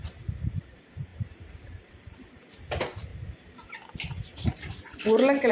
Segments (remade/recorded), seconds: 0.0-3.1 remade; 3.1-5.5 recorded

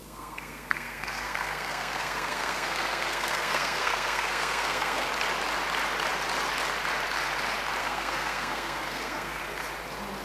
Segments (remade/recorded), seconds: 0.0-5.1 remade; 5.1-7.8 recorded; 7.8-9.4 remade; 9.4-10.2 recorded

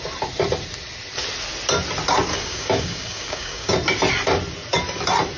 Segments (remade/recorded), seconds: 0.0-2.3 recorded; 2.3-3.7 remade; 3.7-5.4 recorded

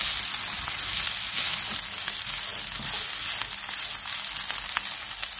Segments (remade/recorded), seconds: 0.0-5.4 recorded

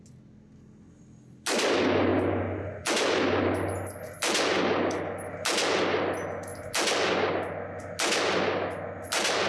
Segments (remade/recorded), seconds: 0.0-9.5 recorded

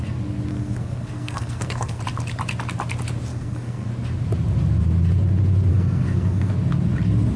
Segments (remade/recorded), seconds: 0.0-0.5 recorded; 0.5-2.0 remade; 2.0-3.3 recorded; 3.3-3.9 remade; 3.9-5.7 recorded; 5.7-6.5 remade; 6.5-7.4 recorded

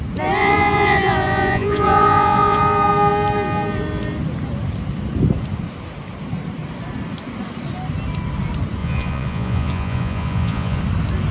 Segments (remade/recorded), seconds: 0.0-0.4 recorded; 0.4-2.6 remade; 2.6-8.8 recorded; 8.8-10.8 remade; 10.8-11.3 recorded